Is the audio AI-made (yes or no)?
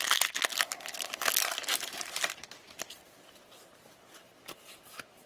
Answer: no